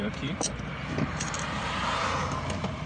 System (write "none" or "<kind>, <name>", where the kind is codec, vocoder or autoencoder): vocoder, BigVGAN v2